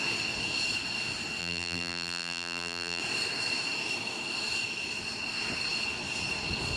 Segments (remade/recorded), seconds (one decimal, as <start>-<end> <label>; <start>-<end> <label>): 0.0-1.4 recorded; 1.4-3.0 remade; 3.0-6.8 recorded